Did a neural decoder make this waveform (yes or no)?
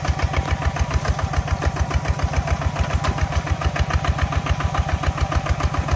no